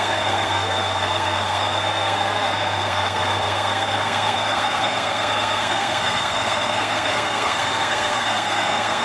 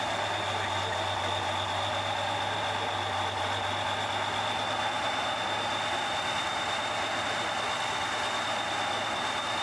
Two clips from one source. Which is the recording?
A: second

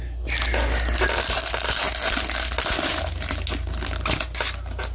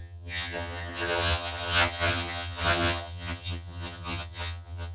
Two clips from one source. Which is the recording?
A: first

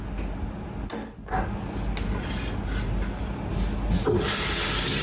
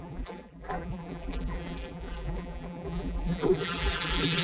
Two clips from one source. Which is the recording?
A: first